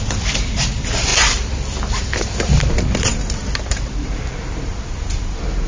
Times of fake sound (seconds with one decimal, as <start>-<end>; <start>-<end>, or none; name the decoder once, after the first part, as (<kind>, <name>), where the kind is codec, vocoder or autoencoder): none